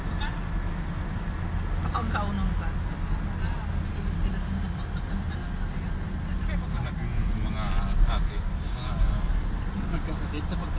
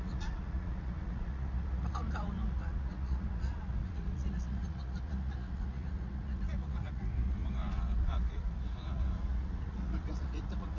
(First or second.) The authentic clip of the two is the first